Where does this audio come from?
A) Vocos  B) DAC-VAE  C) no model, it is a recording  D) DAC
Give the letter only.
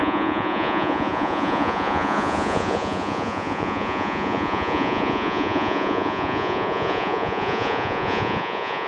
A